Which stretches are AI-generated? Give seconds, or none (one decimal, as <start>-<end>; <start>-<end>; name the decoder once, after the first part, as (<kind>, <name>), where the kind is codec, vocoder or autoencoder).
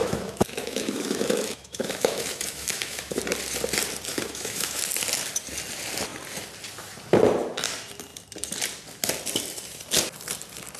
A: 0.0-3.2 (autoencoder, DAC-VAE); 4.1-4.8